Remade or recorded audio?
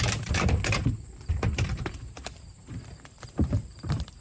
remade